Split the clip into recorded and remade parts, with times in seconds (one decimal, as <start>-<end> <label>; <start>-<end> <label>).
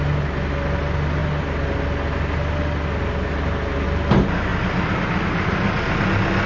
0.0-6.5 recorded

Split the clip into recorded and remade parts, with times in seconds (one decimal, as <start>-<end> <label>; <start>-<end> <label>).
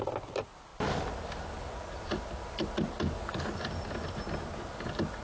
0.0-5.2 recorded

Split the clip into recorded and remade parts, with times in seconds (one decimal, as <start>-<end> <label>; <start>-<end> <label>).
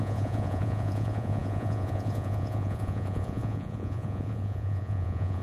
0.0-5.4 remade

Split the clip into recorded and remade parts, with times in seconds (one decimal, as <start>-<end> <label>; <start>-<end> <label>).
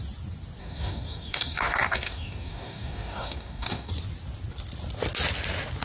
0.0-0.6 recorded; 0.6-3.9 remade; 3.9-5.8 recorded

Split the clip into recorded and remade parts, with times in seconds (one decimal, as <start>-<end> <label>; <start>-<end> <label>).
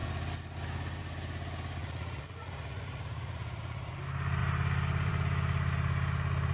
0.0-1.8 recorded; 1.8-3.9 remade; 3.9-6.5 recorded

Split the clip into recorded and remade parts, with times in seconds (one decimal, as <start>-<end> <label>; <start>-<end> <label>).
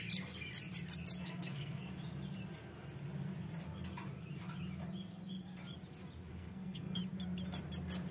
0.0-1.2 recorded; 1.2-1.9 remade; 1.9-6.3 recorded; 6.3-7.0 remade; 7.0-8.1 recorded